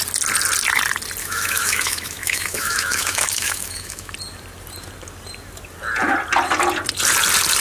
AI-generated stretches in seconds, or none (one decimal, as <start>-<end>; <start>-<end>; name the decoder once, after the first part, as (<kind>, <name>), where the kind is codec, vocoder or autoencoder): 1.2-4.1 (autoencoder, DAC-VAE)